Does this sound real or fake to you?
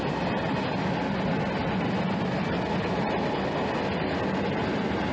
real